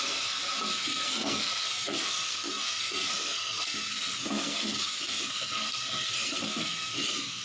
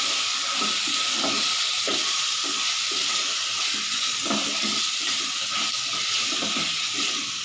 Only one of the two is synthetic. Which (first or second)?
first